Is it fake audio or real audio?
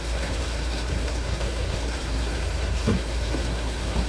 fake